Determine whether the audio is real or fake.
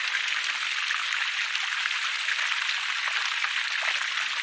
real